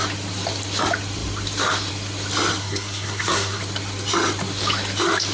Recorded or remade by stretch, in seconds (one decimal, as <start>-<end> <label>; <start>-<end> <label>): 0.0-2.6 recorded; 2.6-3.6 remade; 3.6-5.3 recorded